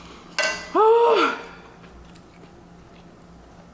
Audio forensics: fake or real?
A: real